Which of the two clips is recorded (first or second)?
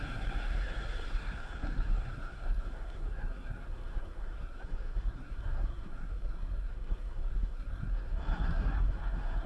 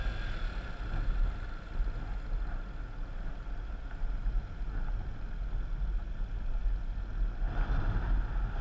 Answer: second